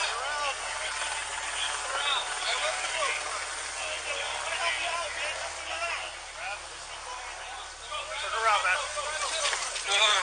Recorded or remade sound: recorded